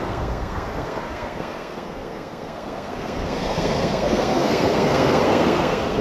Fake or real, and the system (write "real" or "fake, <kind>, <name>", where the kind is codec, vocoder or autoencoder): fake, codec, SNAC